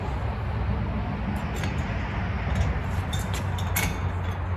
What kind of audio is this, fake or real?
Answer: real